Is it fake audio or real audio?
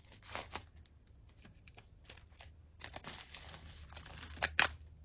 real